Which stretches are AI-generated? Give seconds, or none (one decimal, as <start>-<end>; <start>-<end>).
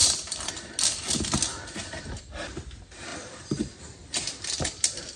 0.0-0.5; 3.1-4.1